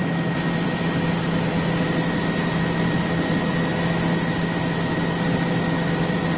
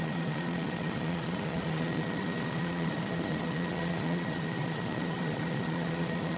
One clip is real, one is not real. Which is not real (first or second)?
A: second